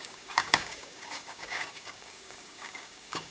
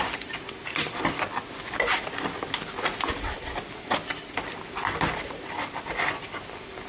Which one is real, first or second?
second